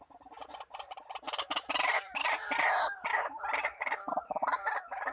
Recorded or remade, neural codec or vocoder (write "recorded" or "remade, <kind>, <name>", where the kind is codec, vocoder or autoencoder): recorded